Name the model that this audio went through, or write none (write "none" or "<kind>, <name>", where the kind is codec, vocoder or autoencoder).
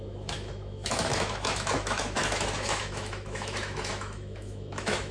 autoencoder, DAC-VAE